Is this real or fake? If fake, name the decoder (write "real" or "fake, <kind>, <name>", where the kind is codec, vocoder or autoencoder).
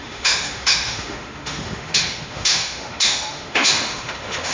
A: fake, autoencoder, DAC-VAE